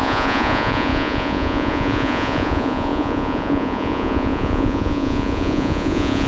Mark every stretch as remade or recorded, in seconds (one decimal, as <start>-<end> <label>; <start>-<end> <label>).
0.0-6.3 remade

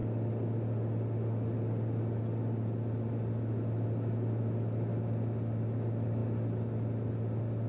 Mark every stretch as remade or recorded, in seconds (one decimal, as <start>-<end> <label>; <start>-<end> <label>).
0.0-7.7 recorded

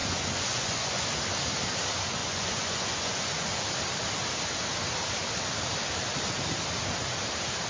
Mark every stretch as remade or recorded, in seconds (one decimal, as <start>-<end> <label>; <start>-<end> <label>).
0.0-1.0 remade; 1.0-2.2 recorded; 2.2-3.5 remade; 3.5-7.7 recorded

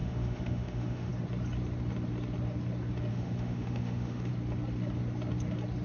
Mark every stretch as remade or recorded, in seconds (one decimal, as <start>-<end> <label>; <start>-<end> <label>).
0.0-1.1 remade; 1.1-3.1 recorded; 3.1-4.3 remade; 4.3-5.8 recorded

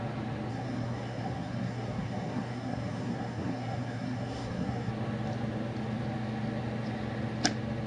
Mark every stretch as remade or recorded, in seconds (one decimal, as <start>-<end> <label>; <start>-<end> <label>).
0.0-0.5 recorded; 0.5-4.9 remade; 4.9-7.9 recorded

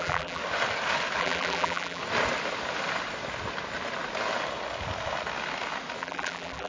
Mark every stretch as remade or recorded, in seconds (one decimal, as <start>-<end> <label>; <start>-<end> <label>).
0.0-0.4 remade; 0.4-1.2 recorded; 1.2-2.0 remade; 2.0-6.0 recorded; 6.0-6.7 remade

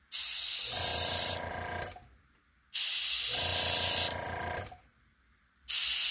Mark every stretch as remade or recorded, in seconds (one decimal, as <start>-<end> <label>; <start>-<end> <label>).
0.0-0.9 recorded; 0.9-1.5 remade; 1.5-3.5 recorded; 3.5-6.1 remade

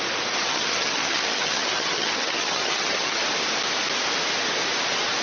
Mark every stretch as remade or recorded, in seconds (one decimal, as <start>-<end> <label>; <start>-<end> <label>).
0.0-0.4 recorded; 0.4-3.2 remade; 3.2-5.2 recorded